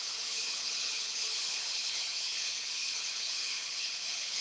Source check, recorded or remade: remade